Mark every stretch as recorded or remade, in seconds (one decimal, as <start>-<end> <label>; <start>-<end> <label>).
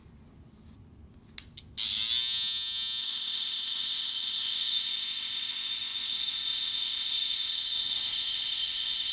0.0-3.0 recorded; 3.0-9.1 remade